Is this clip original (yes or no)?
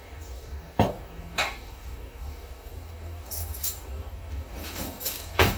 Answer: no